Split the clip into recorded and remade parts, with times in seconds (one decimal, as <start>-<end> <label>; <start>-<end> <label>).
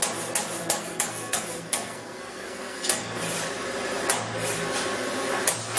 0.0-0.6 recorded; 0.6-3.2 remade; 3.2-5.8 recorded